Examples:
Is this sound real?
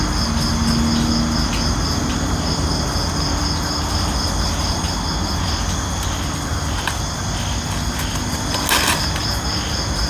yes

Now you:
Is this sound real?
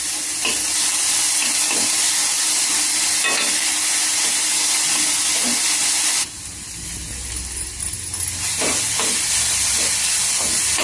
yes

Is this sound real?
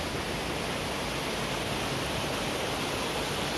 yes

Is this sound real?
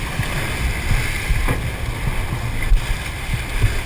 yes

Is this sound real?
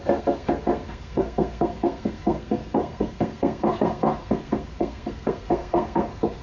no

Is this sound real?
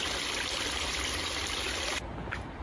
yes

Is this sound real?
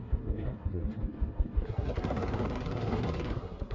no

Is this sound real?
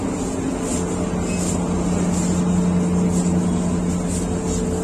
yes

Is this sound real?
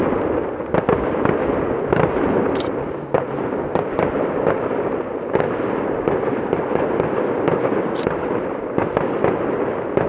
yes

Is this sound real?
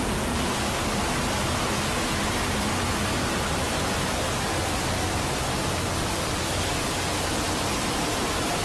yes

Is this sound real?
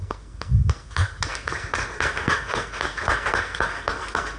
no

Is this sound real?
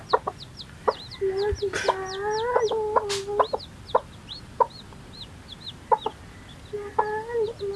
yes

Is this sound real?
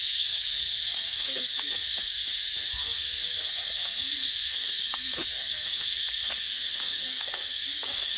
no